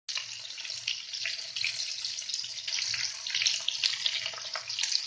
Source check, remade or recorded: recorded